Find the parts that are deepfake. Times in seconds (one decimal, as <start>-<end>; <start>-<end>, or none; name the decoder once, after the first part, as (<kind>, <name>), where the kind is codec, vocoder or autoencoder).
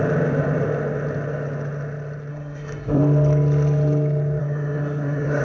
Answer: 2.3-3.0 (codec, SNAC); 4.4-5.4